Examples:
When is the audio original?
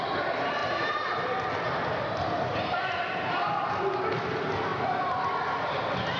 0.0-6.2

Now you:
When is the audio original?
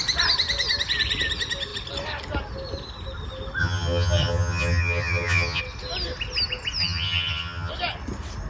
0.0-3.6; 5.6-6.8; 7.7-8.5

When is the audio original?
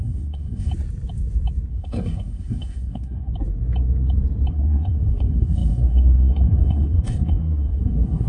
0.7-1.7; 3.3-4.5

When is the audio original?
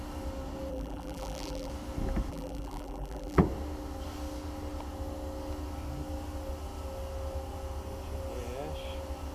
0.0-0.7; 1.7-2.3; 3.4-9.3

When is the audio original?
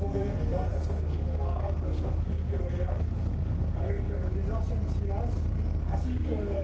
4.3-5.8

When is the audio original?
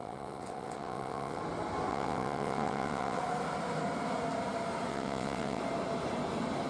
1.4-1.9; 3.2-4.9; 5.6-6.7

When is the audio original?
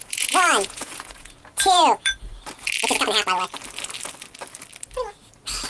2.3-5.7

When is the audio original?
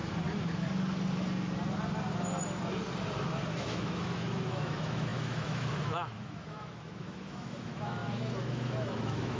0.0-3.5